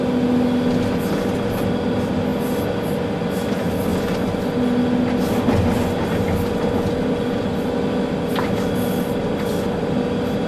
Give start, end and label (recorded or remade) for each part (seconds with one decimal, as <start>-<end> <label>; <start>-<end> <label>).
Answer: 0.0-10.5 recorded